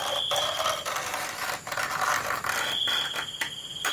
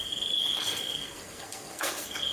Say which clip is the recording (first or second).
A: first